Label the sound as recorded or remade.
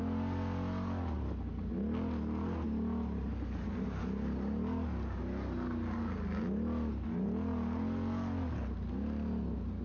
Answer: recorded